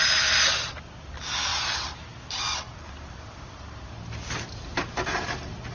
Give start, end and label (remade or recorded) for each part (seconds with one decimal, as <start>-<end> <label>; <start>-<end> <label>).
0.0-5.7 recorded